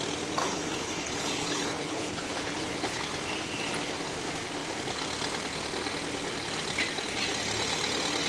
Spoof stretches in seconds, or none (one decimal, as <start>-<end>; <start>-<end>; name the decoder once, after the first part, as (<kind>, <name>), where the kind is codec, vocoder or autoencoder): 0.4-3.0 (codec, HILCodec)